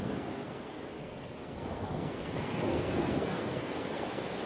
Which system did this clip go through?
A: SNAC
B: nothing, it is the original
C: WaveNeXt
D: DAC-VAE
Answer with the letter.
A